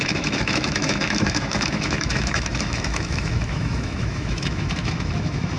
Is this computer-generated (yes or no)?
yes